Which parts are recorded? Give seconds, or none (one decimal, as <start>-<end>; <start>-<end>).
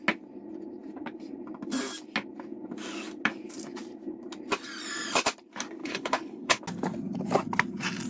0.0-5.8; 6.6-8.1